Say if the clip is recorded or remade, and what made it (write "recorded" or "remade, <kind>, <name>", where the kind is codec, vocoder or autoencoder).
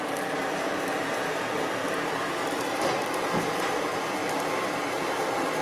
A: remade, vocoder, BigVGAN v2